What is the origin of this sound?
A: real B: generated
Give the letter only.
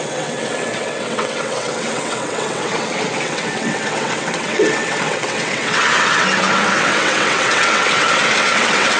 B